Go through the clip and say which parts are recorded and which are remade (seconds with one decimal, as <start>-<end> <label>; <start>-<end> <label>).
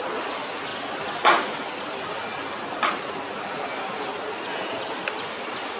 0.0-5.8 recorded